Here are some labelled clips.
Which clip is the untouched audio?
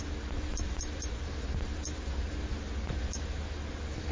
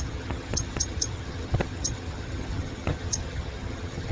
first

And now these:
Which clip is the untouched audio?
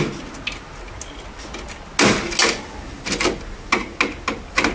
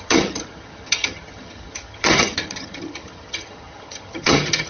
first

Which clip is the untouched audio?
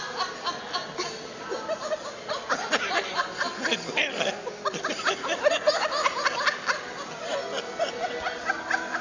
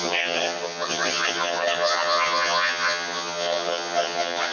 first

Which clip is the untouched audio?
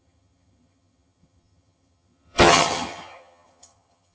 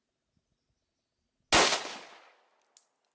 second